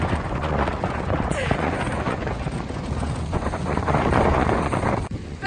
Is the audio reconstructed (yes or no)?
yes